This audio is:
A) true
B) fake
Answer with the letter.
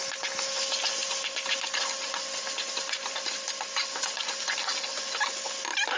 A